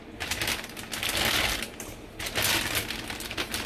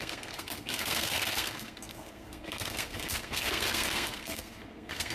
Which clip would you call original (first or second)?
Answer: first